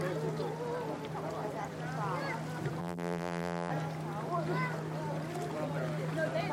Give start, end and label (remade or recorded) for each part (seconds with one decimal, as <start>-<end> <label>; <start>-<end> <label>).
0.0-2.8 recorded; 2.8-3.7 remade; 3.7-6.5 recorded